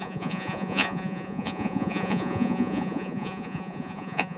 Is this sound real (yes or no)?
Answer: no